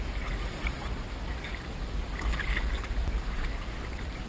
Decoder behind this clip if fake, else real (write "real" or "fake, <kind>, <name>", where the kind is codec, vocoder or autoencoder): real